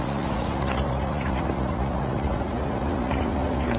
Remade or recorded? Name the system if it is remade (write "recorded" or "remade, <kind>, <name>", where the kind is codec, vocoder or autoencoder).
remade, vocoder, Vocos